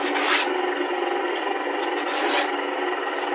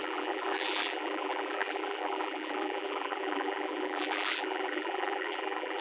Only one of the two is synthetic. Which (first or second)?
second